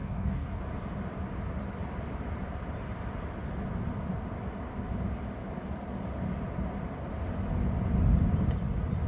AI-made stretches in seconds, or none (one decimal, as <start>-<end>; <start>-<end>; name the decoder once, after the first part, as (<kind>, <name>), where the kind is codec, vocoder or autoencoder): 0.0-0.6 (codec, DAC)